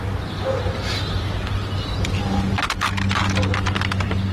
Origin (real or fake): real